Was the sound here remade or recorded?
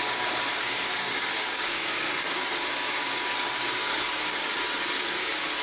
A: remade